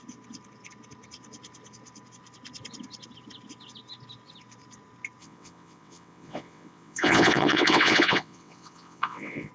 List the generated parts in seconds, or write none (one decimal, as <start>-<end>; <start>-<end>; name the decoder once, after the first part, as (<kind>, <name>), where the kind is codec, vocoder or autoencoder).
5.2-9.5 (vocoder, WaveNeXt)

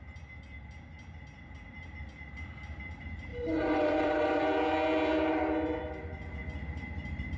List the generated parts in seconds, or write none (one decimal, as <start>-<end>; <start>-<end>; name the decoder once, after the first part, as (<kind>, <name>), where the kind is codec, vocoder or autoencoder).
3.3-4.4 (vocoder, WaveNeXt)

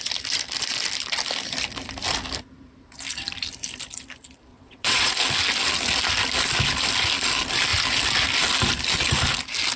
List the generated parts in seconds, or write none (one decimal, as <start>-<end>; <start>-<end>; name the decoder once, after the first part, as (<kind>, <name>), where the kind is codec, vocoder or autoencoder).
4.5-5.1 (vocoder, WaveNeXt)

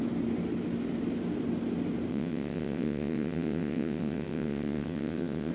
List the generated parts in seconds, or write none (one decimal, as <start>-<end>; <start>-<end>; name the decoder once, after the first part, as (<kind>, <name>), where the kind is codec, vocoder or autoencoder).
2.1-5.5 (vocoder, WaveNeXt)